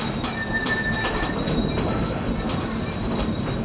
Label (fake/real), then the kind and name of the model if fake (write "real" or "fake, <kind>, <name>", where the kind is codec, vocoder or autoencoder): fake, vocoder, BigVGAN v2